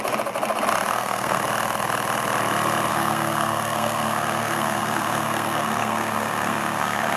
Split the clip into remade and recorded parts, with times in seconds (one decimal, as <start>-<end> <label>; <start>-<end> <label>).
0.0-0.9 recorded; 0.9-1.4 remade; 1.4-2.9 recorded; 2.9-7.2 remade